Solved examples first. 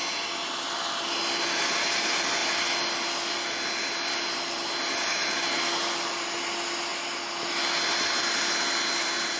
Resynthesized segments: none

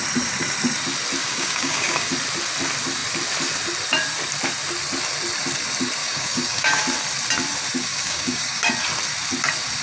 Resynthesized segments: 1.2-2.1; 6.0-6.8; 7.9-8.7